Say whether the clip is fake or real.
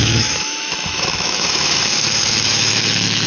fake